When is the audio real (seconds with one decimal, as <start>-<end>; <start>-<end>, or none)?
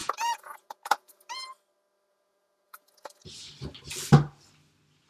1.1-2.1; 3.5-5.1